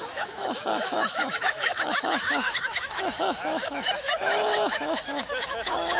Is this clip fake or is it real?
fake